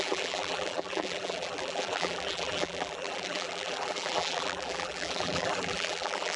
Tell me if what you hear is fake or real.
fake